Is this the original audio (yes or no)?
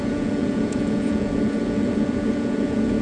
no